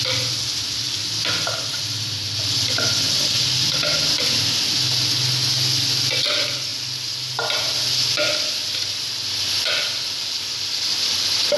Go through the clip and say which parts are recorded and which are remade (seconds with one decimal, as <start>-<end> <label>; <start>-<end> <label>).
0.0-11.6 recorded